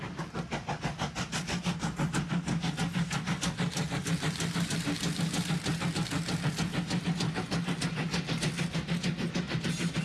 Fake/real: real